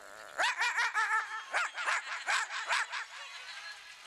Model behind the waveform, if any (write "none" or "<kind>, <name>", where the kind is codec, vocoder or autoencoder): none